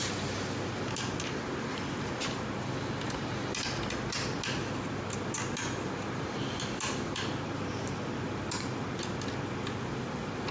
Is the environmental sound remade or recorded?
recorded